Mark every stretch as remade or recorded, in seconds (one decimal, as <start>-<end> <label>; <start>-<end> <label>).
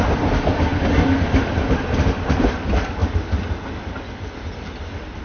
0.0-5.2 recorded